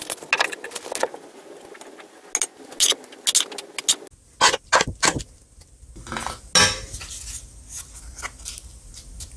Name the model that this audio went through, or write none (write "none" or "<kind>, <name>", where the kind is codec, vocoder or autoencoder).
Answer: none